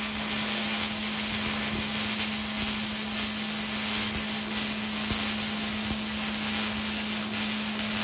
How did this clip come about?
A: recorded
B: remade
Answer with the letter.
A